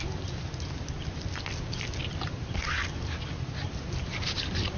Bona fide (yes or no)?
yes